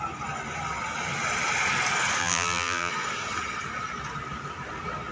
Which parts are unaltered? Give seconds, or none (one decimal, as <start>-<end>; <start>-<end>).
0.0-2.2; 2.9-5.1